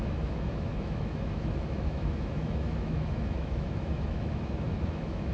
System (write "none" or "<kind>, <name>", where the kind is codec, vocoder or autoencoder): autoencoder, DAC-VAE